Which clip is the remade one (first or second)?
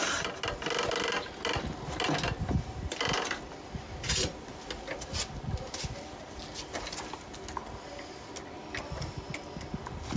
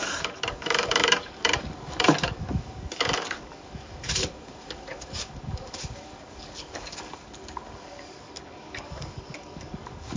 second